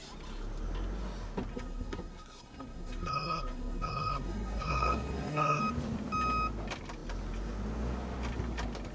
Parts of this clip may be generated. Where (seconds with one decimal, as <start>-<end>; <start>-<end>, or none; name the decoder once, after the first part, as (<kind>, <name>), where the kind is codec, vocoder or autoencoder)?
1.5-5.6 (codec, SNAC)